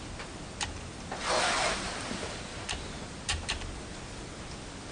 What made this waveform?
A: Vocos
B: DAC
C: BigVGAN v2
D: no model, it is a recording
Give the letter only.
D